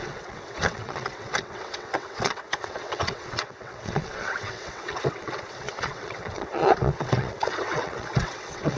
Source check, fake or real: fake